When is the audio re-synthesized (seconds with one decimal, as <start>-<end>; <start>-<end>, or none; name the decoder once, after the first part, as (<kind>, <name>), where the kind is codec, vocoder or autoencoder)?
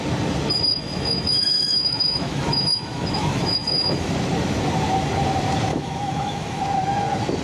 0.7-4.1 (autoencoder, DAC-VAE); 5.7-6.6